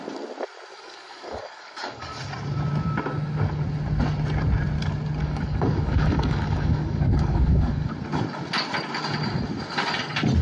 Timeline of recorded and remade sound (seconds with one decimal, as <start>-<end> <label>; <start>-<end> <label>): 0.0-0.7 recorded; 0.7-2.2 remade; 2.2-5.2 recorded; 5.2-7.9 remade; 7.9-10.4 recorded